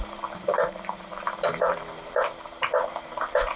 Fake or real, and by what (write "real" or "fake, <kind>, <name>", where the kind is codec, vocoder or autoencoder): fake, vocoder, BigVGAN v2